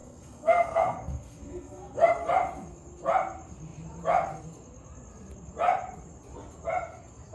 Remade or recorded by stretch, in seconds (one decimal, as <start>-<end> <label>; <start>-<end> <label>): 0.0-2.1 remade; 2.1-7.3 recorded